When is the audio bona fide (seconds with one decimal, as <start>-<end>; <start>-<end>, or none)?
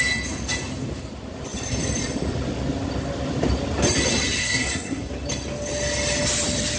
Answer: 0.0-4.4; 5.1-6.8